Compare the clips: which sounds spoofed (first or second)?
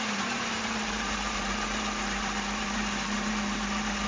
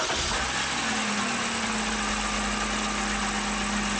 first